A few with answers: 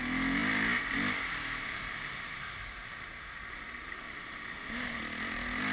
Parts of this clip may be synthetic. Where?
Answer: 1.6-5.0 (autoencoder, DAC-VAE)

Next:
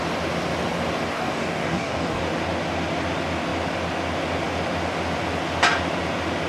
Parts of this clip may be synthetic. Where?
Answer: 1.1-2.2 (codec, DAC)